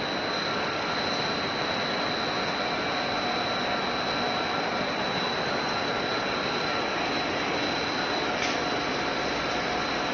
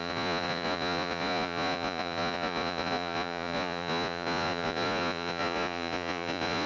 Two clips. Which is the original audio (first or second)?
first